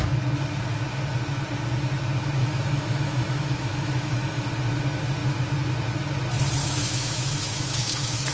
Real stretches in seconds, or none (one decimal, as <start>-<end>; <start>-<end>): 0.0-2.4; 4.5-6.6